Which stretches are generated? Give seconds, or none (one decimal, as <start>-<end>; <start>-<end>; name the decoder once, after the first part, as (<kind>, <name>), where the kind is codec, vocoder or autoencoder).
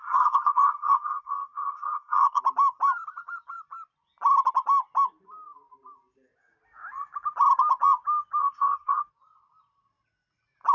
0.0-2.4 (codec, SNAC); 8.4-9.0